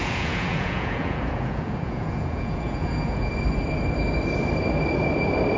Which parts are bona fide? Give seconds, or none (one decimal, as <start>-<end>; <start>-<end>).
3.3-5.6